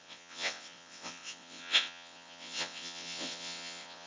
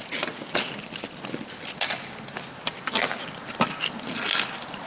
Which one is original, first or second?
second